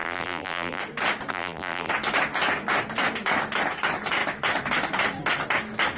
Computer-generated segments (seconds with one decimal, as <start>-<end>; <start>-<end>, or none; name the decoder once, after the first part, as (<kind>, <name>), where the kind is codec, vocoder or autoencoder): 0.0-0.8 (vocoder, BigVGAN v2); 1.3-1.9